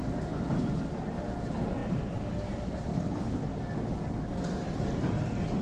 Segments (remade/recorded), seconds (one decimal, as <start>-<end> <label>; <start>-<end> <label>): 0.0-2.9 recorded; 2.9-3.4 remade; 3.4-5.6 recorded